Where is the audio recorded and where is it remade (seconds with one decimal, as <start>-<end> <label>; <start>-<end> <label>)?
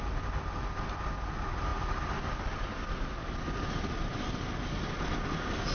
0.0-5.7 recorded